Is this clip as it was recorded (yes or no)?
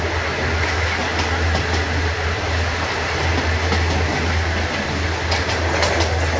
yes